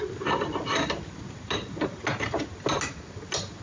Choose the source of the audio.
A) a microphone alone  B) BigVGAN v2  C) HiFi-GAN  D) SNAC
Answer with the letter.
A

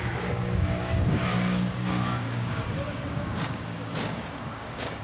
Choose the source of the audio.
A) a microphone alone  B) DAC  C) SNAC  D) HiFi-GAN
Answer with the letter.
B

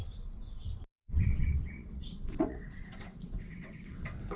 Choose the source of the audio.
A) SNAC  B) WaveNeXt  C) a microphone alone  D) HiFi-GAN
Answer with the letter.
B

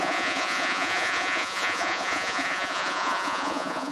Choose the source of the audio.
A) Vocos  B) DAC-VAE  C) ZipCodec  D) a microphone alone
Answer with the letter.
A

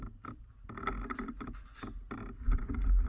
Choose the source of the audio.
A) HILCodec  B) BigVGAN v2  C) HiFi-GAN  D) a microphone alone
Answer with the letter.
B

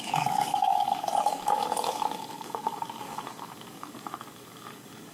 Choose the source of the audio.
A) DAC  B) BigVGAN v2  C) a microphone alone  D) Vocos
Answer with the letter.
A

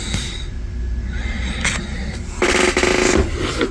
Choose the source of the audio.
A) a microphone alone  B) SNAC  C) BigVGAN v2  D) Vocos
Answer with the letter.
A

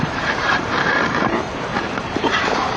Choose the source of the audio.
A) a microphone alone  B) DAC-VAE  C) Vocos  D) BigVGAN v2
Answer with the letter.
D